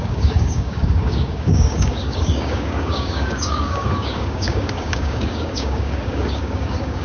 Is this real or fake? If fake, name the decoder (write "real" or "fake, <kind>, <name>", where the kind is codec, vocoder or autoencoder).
fake, codec, DAC